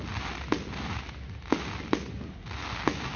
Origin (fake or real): real